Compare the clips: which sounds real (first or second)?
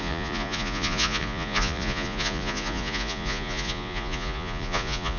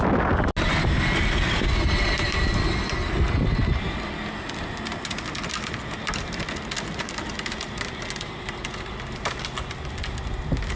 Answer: second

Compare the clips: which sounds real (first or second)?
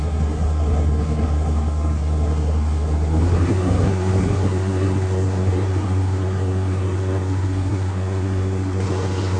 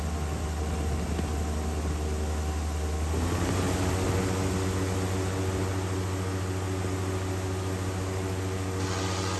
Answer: second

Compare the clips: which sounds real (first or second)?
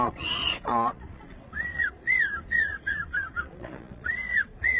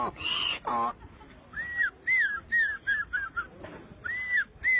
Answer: second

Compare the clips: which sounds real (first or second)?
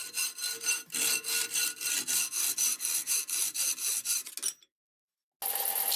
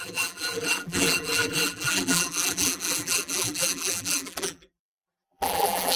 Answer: first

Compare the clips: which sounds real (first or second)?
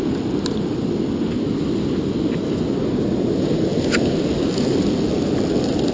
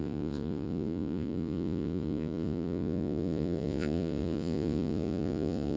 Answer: first